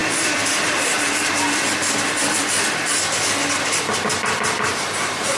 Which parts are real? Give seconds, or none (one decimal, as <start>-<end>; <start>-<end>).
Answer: 1.3-5.4